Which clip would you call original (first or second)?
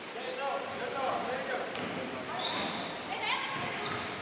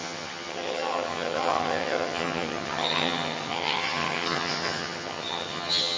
first